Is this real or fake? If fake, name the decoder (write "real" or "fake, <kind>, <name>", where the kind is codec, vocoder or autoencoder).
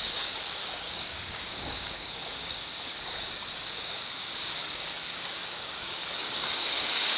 fake, codec, DAC